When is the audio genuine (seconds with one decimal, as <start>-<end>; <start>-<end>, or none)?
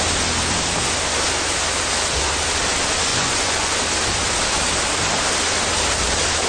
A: 0.0-3.1; 3.8-6.5